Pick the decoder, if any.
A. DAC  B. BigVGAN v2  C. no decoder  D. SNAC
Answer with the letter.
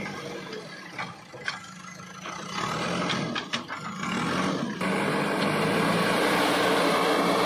C